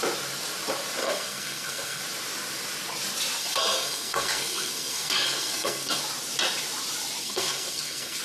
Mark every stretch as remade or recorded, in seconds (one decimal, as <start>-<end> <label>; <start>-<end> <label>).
0.0-1.0 recorded; 1.0-2.0 remade; 2.0-3.4 recorded; 3.4-6.0 remade; 6.0-7.2 recorded; 7.2-8.2 remade